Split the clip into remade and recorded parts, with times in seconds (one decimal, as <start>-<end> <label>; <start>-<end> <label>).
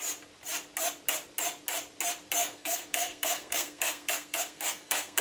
0.0-2.4 recorded; 2.4-5.2 remade